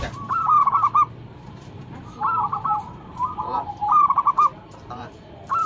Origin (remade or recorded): remade